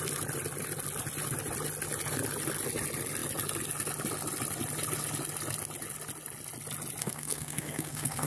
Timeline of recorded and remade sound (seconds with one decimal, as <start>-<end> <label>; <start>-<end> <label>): 0.0-7.0 recorded; 7.0-8.3 remade